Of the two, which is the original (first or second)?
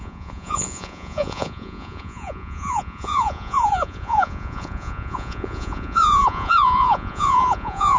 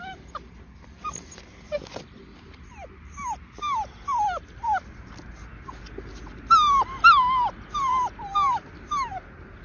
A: second